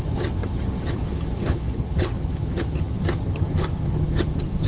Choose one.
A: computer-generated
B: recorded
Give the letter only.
A